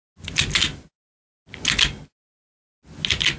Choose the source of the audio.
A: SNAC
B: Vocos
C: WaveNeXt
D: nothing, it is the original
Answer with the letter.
D